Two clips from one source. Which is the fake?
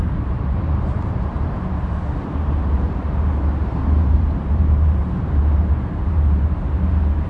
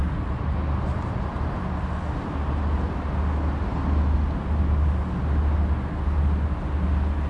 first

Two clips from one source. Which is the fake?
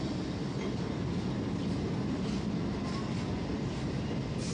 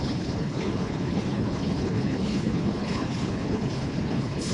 second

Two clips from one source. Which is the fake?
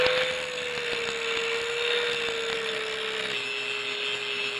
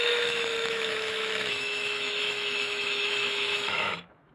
second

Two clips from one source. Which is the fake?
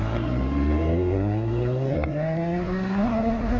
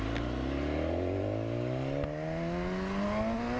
first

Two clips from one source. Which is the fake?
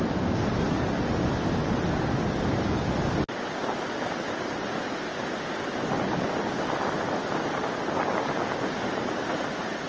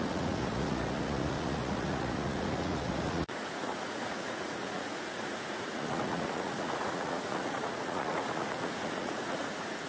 second